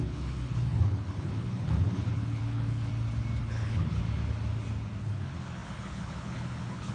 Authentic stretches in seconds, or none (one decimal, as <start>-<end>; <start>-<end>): 2.9-3.4; 4.0-5.0